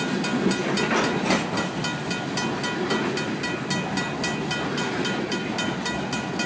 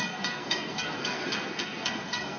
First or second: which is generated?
second